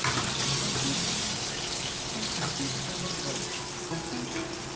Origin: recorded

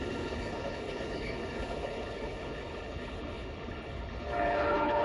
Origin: remade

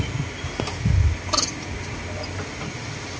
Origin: recorded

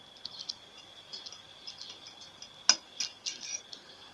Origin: recorded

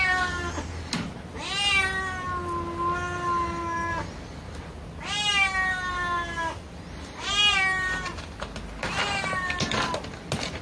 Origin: recorded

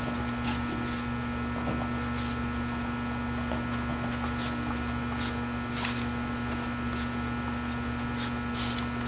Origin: recorded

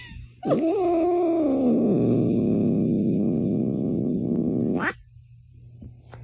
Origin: recorded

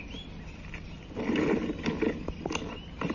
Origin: recorded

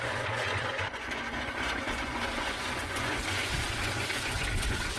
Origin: remade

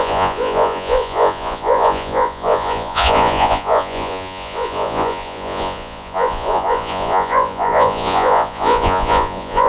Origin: remade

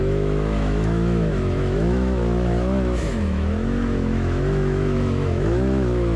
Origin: remade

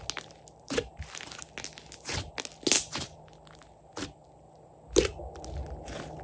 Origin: recorded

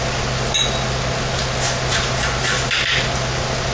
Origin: recorded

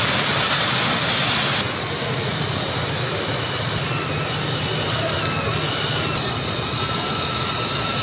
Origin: recorded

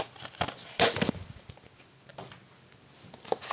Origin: recorded